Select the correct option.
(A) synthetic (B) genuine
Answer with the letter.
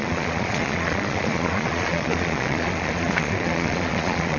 A